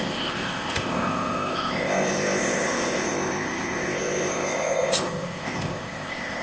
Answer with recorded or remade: remade